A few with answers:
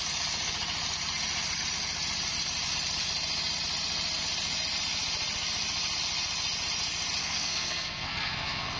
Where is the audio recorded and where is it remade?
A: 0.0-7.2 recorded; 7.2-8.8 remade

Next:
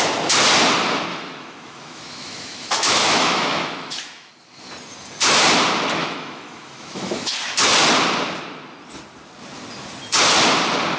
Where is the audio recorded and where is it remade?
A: 0.0-1.1 recorded; 1.1-4.3 remade; 4.3-6.0 recorded; 6.0-7.3 remade; 7.3-11.0 recorded

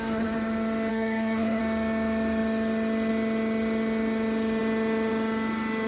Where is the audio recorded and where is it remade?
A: 0.0-0.9 recorded; 0.9-1.6 remade; 1.6-5.9 recorded